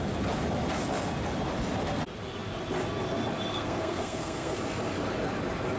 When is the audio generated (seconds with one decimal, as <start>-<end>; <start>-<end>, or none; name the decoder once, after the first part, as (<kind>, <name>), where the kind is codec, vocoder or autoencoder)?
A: 3.5-4.6 (codec, SNAC)